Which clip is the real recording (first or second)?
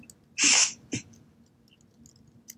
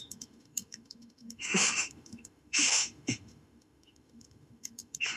first